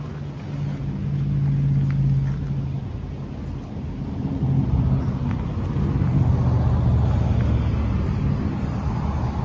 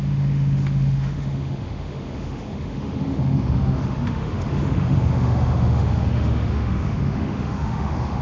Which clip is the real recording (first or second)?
first